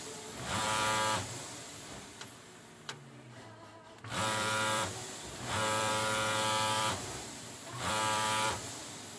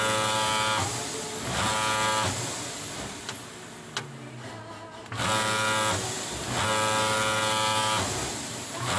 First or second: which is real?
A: second